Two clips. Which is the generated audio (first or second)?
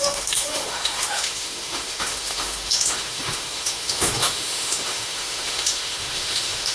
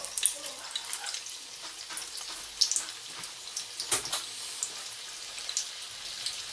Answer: first